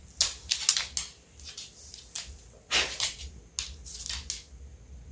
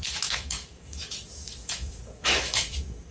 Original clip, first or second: first